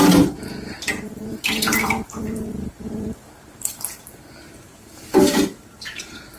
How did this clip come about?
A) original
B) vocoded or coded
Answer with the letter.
B